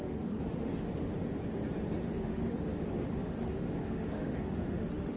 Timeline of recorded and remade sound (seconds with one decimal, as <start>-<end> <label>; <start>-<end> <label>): 0.0-0.7 remade; 0.7-2.1 recorded; 2.1-5.2 remade